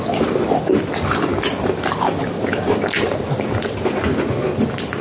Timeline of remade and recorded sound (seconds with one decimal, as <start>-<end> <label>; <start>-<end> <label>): 0.0-1.3 remade; 1.3-3.9 recorded; 3.9-5.0 remade